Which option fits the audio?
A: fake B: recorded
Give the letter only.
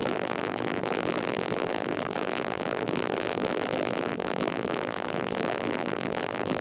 A